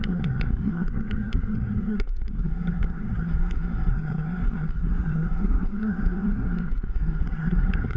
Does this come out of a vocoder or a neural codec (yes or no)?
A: yes